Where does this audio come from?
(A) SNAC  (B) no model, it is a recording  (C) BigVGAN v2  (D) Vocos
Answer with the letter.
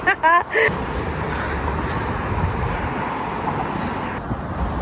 B